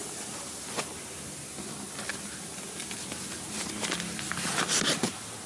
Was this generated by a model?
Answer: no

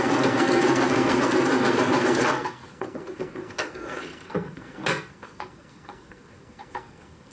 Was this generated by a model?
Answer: yes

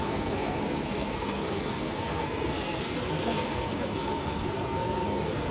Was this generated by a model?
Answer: yes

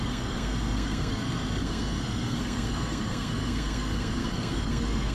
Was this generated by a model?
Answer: yes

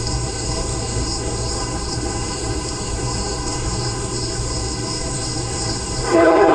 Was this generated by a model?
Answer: yes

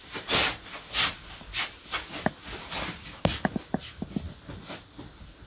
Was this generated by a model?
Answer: no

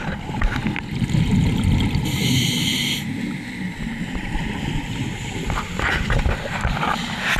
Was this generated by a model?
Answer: no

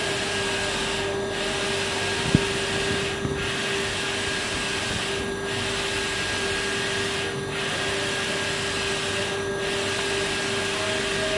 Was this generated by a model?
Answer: no